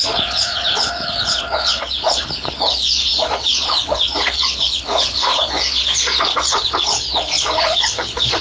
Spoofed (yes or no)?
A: yes